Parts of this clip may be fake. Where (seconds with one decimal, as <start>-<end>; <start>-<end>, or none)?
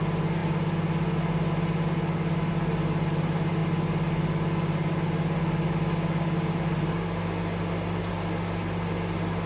none